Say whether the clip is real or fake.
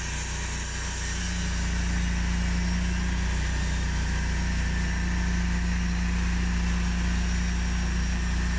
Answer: real